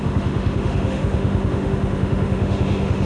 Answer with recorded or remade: remade